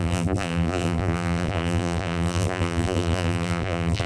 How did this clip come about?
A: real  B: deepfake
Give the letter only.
B